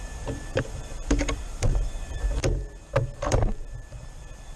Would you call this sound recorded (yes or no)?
no